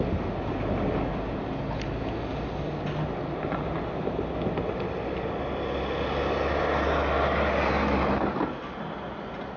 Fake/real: real